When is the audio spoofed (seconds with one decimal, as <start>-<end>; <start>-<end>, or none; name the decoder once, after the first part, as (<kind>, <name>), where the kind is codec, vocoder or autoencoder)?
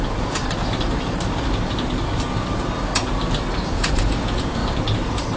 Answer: 0.0-0.4 (vocoder, Vocos); 3.6-4.6